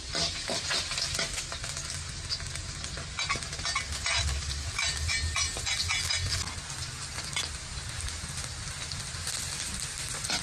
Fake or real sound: real